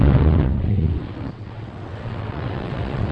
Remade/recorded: remade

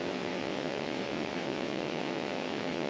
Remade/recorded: remade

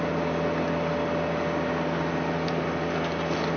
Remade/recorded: recorded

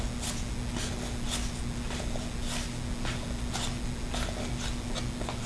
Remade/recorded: recorded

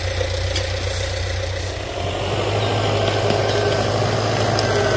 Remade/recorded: recorded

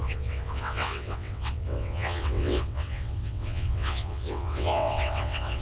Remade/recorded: remade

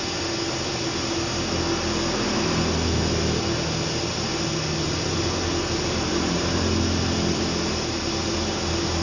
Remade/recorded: recorded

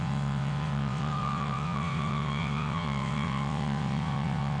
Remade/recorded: remade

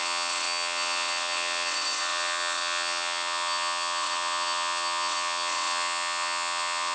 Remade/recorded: remade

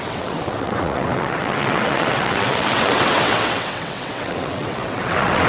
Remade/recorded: remade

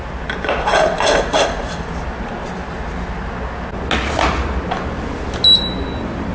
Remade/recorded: recorded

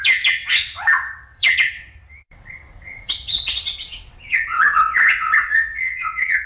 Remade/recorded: remade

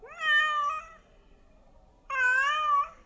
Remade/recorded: recorded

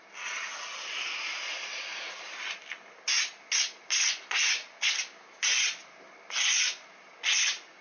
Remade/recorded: recorded